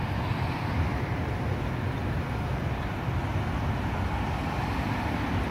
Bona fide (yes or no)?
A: yes